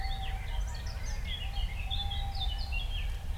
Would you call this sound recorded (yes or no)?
yes